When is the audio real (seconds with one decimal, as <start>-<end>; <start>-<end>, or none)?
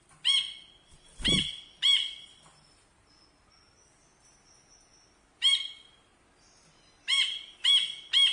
0.0-8.3